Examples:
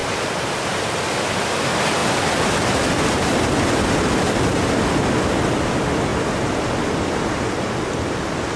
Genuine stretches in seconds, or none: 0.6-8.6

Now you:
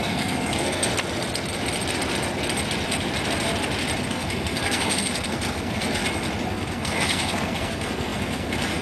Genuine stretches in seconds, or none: 0.9-4.1; 6.0-6.5

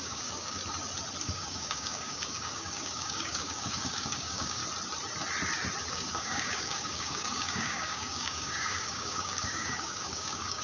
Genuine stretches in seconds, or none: 0.6-1.2; 4.6-5.9